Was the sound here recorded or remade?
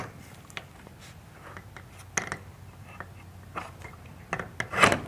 recorded